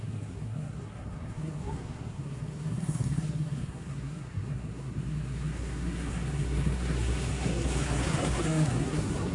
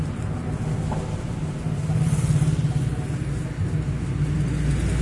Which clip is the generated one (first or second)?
first